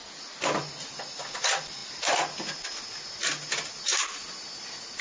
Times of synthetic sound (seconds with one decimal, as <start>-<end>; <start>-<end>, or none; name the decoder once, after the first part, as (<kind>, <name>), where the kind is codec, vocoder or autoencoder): none